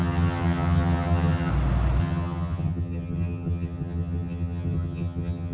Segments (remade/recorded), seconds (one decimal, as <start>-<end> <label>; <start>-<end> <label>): 0.0-1.5 remade; 1.5-2.0 recorded; 2.0-5.5 remade